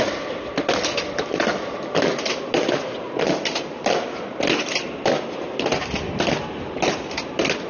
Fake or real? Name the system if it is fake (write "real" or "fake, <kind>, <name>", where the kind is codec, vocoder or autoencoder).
real